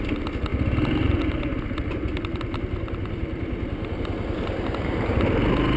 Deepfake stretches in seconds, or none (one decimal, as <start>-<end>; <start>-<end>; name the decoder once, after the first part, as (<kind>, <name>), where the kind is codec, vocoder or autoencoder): none